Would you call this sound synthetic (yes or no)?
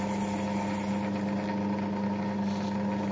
no